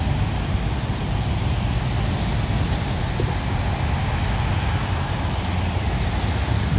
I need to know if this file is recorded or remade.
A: recorded